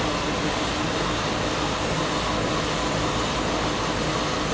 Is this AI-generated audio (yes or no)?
no